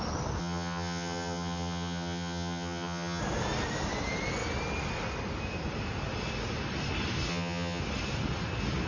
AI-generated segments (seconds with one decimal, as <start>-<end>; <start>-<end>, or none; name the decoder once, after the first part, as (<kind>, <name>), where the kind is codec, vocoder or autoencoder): 0.4-3.2 (vocoder, HiFi-GAN); 7.3-7.8